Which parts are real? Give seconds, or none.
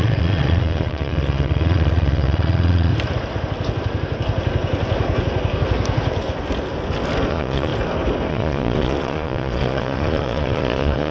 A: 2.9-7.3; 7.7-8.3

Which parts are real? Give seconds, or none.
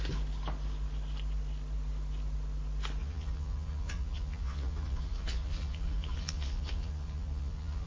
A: 0.0-3.0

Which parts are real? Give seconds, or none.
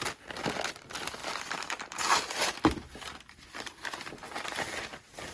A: 0.0-5.3